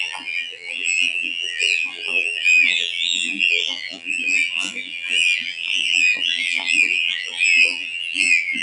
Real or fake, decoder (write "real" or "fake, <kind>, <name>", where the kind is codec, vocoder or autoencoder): fake, vocoder, BigVGAN v2